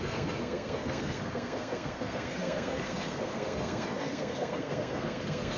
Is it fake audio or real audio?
fake